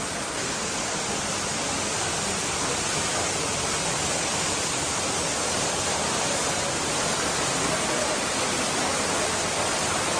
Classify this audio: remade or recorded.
recorded